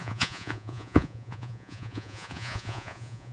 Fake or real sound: fake